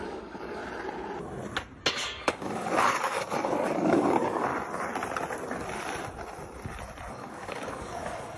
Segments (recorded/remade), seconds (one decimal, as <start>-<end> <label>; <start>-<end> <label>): 0.0-0.6 remade; 0.6-1.9 recorded; 1.9-4.5 remade; 4.5-7.1 recorded; 7.1-8.4 remade